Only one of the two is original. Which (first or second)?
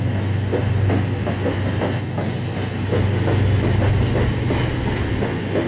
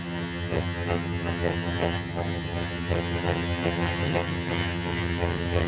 first